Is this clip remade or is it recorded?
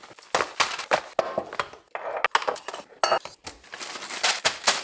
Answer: recorded